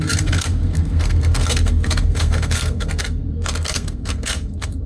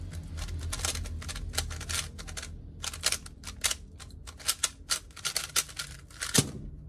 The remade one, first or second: first